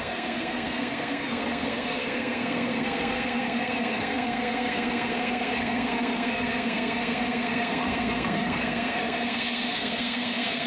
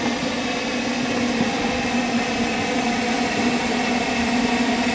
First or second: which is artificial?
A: first